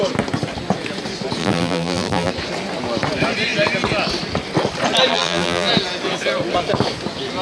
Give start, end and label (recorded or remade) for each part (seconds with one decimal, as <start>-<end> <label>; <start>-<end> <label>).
0.0-1.4 recorded; 1.4-2.3 remade; 2.3-5.1 recorded; 5.1-5.7 remade; 5.7-7.4 recorded

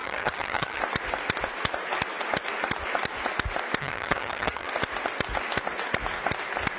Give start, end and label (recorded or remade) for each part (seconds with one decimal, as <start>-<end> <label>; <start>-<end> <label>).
0.0-0.8 remade; 0.8-3.8 recorded; 3.8-4.7 remade; 4.7-6.8 recorded

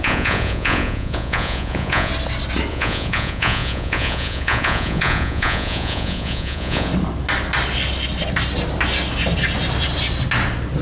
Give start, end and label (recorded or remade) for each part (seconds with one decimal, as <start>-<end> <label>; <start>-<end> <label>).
0.0-2.1 remade; 2.1-2.7 recorded; 2.7-6.9 remade; 6.9-10.8 recorded

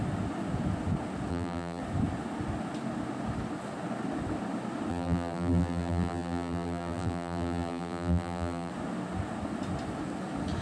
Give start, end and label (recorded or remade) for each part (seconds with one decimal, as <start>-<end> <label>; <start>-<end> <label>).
0.0-1.3 recorded; 1.3-1.8 remade; 1.8-4.9 recorded; 4.9-8.7 remade; 8.7-10.6 recorded

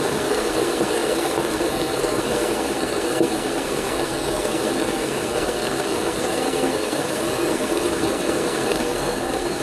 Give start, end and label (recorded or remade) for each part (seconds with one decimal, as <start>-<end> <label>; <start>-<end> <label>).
0.0-9.6 remade

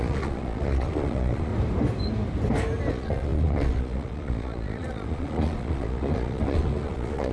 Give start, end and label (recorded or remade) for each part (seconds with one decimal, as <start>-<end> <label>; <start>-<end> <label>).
0.0-1.5 remade; 1.5-2.9 recorded; 2.9-7.3 remade

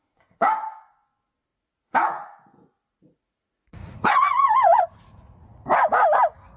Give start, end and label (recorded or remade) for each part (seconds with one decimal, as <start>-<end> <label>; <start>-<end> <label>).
0.0-1.5 recorded; 1.5-5.5 remade; 5.5-6.6 recorded

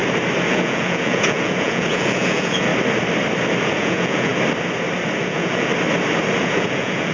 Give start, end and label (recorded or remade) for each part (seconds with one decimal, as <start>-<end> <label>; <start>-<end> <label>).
0.0-0.5 recorded; 0.5-2.7 remade; 2.7-3.6 recorded; 3.6-4.3 remade; 4.3-5.2 recorded; 5.2-5.7 remade; 5.7-6.3 recorded; 6.3-7.1 remade